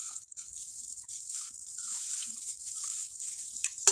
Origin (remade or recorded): remade